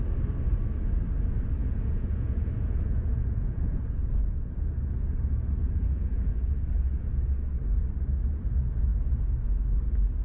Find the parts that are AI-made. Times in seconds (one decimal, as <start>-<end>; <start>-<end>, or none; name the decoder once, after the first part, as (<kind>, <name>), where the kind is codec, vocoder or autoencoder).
1.6-4.1 (vocoder, Vocos); 5.6-6.6

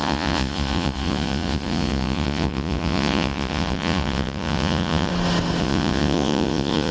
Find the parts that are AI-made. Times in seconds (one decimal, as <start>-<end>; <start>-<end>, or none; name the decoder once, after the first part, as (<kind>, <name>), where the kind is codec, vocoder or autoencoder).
0.0-5.1 (vocoder, Vocos); 5.6-6.9

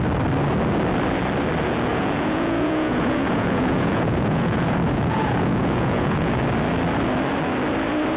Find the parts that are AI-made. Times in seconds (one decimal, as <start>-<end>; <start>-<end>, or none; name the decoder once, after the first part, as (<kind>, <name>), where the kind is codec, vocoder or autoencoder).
1.9-6.4 (vocoder, Vocos)

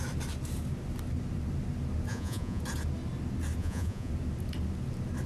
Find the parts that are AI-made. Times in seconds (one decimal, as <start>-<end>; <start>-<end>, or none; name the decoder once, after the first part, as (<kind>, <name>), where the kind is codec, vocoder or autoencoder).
2.1-2.6 (vocoder, Vocos); 3.6-4.1